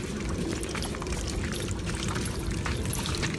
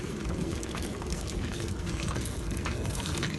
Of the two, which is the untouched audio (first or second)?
first